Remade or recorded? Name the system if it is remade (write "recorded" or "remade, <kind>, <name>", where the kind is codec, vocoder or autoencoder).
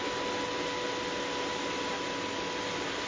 recorded